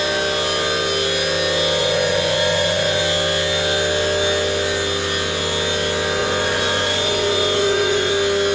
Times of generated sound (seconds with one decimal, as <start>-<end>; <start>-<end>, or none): 1.8-3.0; 6.2-8.1